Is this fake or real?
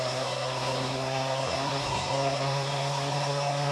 fake